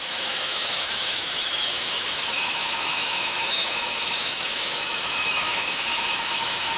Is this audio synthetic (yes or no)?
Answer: yes